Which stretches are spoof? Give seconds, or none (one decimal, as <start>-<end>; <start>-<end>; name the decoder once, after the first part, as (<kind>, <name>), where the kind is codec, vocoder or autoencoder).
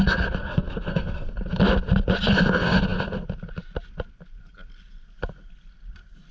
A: 0.4-1.4 (codec, SNAC)